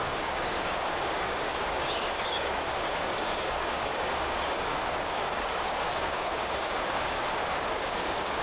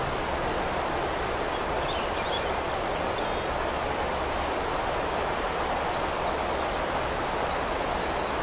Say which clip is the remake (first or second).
first